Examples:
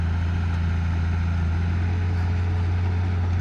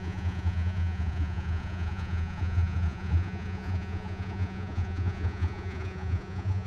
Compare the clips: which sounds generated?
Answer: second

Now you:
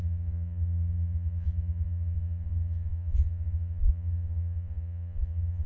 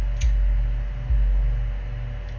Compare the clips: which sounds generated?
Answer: first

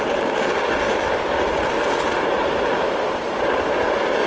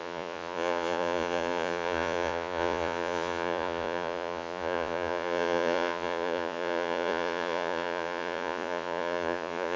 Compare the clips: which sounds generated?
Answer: second